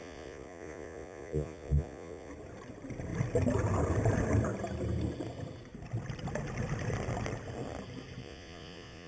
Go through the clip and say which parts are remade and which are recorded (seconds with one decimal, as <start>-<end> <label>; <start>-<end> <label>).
0.0-2.3 remade; 2.3-8.2 recorded; 8.2-9.1 remade